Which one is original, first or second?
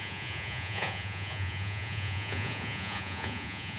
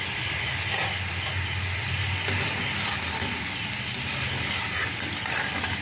second